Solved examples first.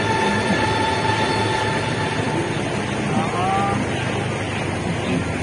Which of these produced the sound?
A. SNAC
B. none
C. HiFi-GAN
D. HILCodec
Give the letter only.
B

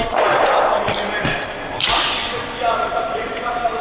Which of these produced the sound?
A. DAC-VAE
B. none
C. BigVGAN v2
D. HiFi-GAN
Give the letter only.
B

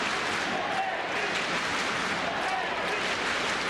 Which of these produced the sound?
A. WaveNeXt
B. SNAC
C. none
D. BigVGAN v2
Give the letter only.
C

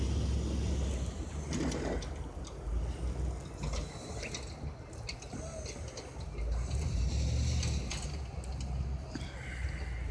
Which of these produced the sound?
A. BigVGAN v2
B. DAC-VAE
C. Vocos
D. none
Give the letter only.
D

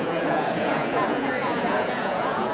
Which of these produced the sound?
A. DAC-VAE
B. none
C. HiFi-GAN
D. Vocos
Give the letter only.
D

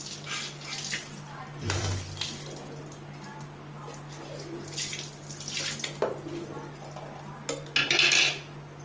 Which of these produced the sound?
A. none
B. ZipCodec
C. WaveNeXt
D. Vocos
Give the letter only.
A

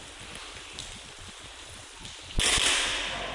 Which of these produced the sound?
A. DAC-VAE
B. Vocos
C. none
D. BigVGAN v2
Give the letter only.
C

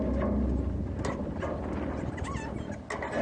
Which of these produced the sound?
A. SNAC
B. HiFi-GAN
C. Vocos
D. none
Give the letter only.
D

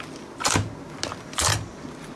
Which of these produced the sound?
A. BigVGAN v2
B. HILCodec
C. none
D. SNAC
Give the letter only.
C